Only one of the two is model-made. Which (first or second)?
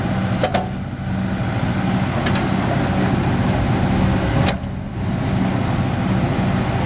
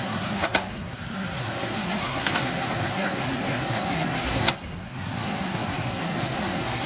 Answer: second